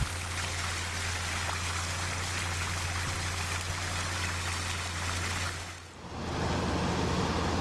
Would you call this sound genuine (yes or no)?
yes